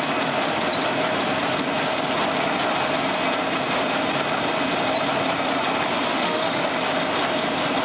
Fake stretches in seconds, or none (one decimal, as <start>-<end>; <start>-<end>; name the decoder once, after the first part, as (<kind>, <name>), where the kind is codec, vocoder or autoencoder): 6.1-6.6 (autoencoder, DAC-VAE)